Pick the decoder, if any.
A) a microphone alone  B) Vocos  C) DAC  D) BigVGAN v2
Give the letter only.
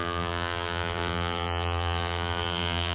D